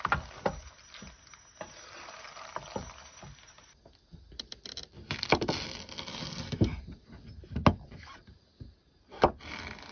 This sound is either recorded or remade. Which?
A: recorded